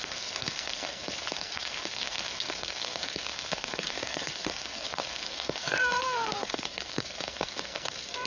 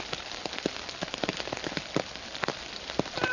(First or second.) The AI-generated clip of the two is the first